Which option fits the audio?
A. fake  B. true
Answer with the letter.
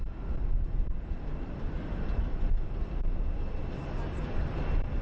B